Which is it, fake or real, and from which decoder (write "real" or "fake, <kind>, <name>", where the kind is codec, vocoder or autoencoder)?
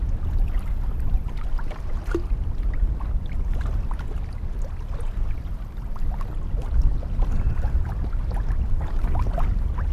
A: real